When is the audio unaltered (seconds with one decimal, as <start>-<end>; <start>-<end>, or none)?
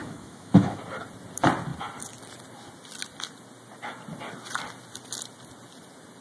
0.8-6.2